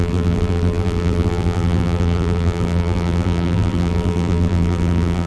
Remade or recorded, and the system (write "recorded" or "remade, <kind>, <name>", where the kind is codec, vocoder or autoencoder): remade, vocoder, BigVGAN v2